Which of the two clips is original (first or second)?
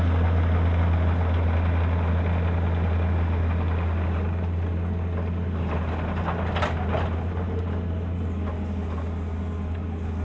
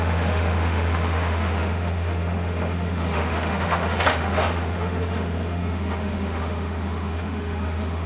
first